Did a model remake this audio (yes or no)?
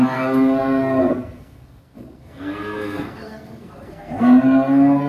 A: yes